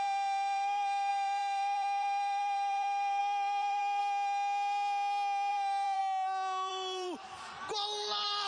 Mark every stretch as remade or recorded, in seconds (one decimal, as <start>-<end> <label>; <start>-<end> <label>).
0.0-4.0 remade; 4.0-5.5 recorded; 5.5-6.0 remade; 6.0-6.7 recorded; 6.7-8.5 remade